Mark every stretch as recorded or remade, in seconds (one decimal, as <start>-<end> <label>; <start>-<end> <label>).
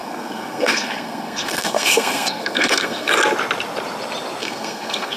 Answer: 0.0-3.1 remade; 3.1-4.4 recorded; 4.4-5.2 remade